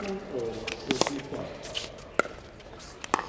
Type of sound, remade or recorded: recorded